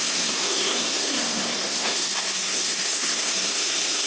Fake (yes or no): yes